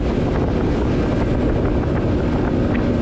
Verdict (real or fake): real